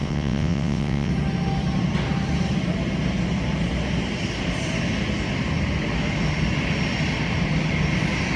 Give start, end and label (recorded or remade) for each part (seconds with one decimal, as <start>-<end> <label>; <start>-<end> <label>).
0.0-1.1 remade; 1.1-8.4 recorded